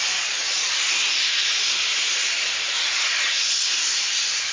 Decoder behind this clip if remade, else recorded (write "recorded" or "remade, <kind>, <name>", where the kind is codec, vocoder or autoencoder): remade, vocoder, BigVGAN v2